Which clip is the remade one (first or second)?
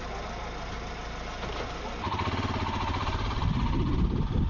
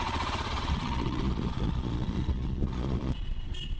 second